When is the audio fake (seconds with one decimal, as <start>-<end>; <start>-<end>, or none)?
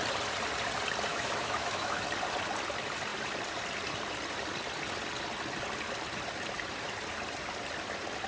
1.1-2.0